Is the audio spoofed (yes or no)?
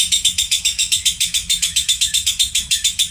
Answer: yes